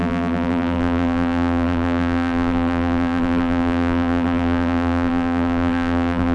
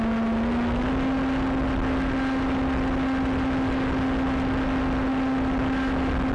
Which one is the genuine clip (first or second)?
second